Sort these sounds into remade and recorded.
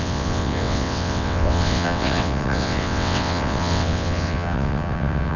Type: remade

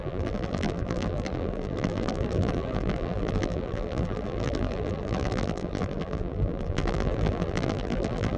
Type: remade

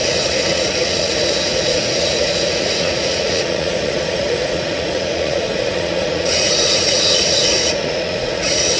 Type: remade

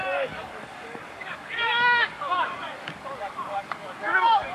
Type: remade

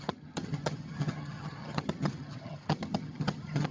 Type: remade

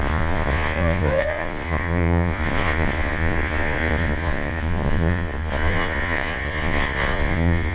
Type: remade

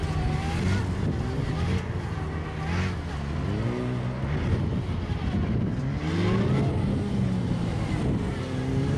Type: recorded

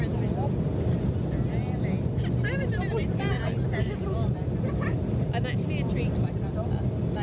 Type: recorded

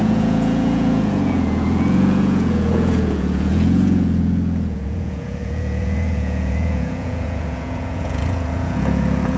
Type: remade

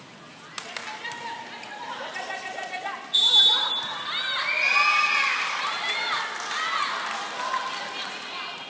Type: recorded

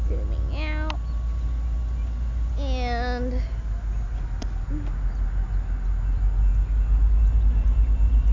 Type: recorded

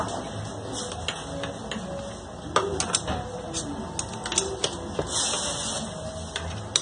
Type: recorded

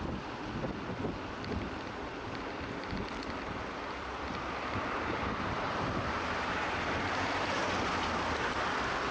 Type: remade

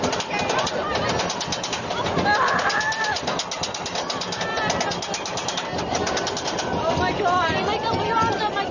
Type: recorded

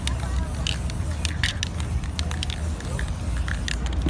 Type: recorded